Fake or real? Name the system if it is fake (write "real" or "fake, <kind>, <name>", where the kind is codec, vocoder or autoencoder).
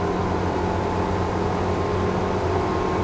real